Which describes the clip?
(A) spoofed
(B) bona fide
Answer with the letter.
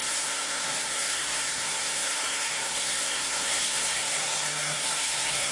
A